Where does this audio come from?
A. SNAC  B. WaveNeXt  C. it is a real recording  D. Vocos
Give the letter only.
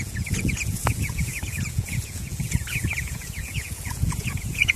D